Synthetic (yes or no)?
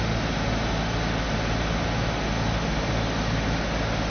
no